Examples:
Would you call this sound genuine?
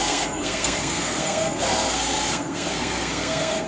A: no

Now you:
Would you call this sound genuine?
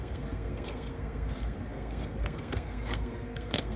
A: no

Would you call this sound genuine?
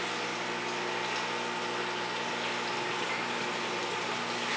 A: yes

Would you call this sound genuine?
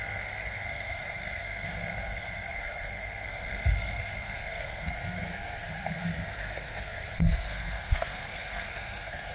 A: no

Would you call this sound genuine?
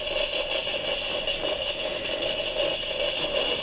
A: yes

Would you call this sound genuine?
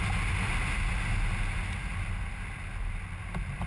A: yes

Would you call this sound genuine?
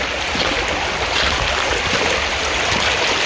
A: yes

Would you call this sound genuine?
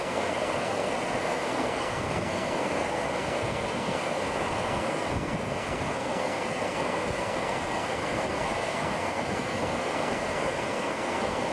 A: no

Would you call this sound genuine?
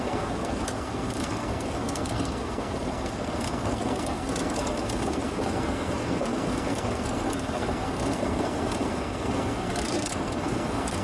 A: no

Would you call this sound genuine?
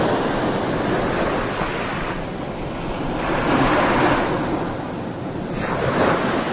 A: yes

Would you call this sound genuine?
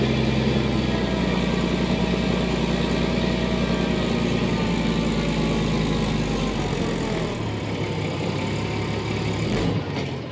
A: yes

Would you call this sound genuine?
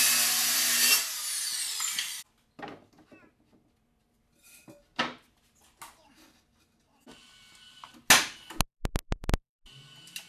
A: yes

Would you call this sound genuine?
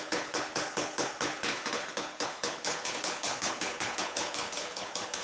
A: no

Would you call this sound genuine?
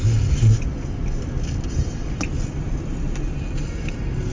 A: yes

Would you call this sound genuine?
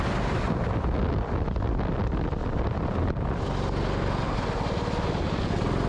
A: yes